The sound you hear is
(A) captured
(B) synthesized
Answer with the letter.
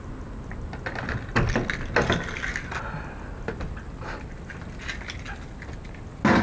A